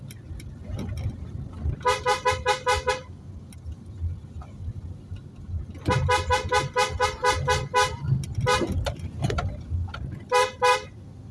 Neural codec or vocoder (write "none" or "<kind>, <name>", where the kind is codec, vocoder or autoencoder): none